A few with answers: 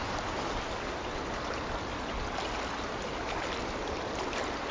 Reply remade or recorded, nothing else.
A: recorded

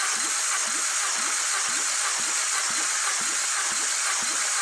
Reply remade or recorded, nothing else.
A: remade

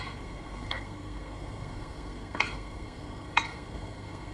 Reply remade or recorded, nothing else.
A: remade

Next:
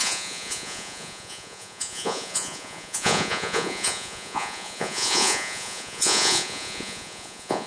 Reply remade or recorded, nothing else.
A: remade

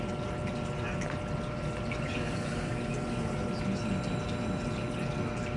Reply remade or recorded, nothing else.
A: recorded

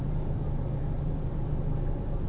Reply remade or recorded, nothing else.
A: remade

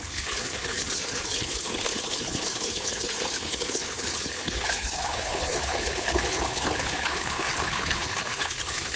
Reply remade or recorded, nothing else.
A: remade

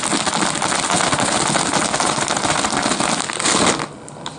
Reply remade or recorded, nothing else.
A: recorded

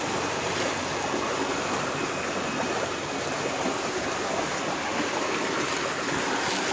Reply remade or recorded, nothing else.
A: recorded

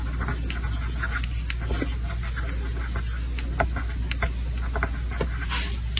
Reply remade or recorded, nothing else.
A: recorded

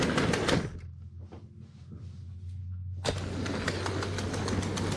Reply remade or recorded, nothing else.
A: recorded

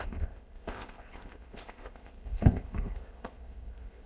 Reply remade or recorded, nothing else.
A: remade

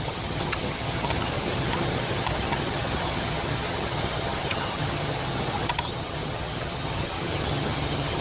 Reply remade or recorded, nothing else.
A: remade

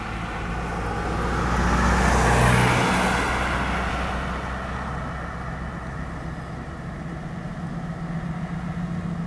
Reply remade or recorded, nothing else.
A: recorded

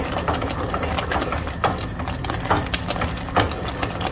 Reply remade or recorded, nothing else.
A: recorded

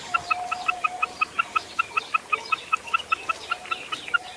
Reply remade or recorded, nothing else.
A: recorded